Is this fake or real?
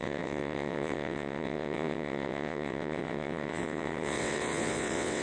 fake